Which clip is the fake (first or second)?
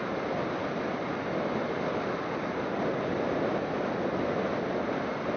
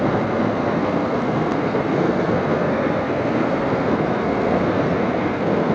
second